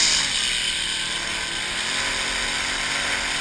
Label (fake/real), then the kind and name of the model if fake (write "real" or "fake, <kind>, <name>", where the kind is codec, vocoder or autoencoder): real